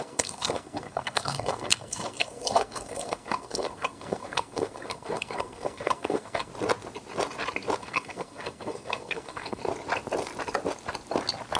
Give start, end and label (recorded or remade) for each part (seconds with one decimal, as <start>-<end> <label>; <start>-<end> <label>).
0.0-6.5 remade; 6.5-7.8 recorded; 7.8-9.6 remade; 9.6-11.6 recorded

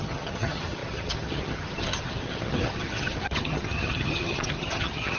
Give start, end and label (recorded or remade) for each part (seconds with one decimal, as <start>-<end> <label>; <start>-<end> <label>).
0.0-5.2 remade

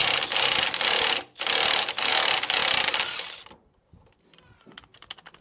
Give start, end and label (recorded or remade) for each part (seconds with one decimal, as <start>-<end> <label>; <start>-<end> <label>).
0.0-5.4 recorded

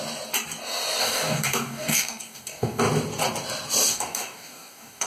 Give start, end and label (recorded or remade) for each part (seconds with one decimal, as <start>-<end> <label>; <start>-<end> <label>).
0.0-1.0 recorded; 1.0-2.8 remade; 2.8-3.9 recorded; 3.9-5.1 remade

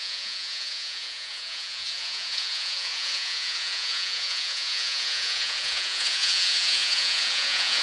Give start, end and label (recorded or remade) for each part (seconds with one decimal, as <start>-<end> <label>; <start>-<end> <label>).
0.0-7.8 remade

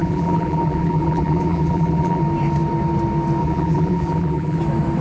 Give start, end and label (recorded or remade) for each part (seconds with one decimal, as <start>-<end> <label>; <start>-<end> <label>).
0.0-2.2 remade; 2.2-3.4 recorded; 3.4-4.6 remade; 4.6-5.0 recorded

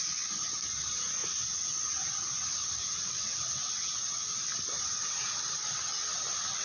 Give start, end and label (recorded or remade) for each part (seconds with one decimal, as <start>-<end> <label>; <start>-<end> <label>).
0.0-6.6 recorded

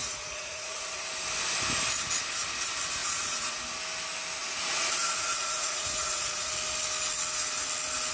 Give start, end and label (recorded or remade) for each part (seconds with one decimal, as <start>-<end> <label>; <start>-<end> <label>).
0.0-1.1 remade; 1.1-3.0 recorded; 3.0-3.6 remade; 3.6-4.4 recorded; 4.4-6.5 remade; 6.5-8.1 recorded